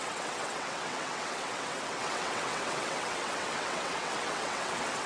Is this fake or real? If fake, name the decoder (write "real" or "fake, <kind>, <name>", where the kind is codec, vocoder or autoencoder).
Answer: fake, vocoder, WaveNeXt